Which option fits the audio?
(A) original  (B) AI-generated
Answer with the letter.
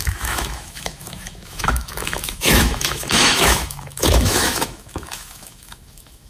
B